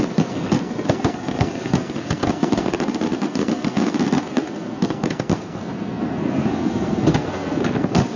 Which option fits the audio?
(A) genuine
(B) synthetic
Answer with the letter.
B